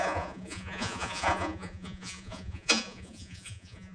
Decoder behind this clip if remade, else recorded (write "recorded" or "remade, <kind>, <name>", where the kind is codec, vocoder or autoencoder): remade, vocoder, Vocos